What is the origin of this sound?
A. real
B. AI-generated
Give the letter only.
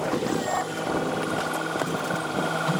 A